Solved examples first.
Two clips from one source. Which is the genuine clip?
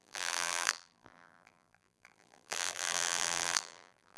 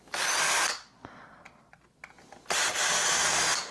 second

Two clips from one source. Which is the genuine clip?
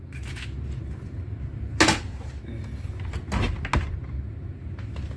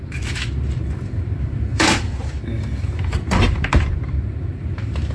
first